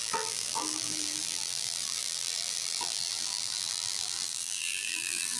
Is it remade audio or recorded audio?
remade